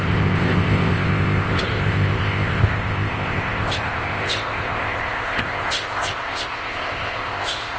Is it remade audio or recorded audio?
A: remade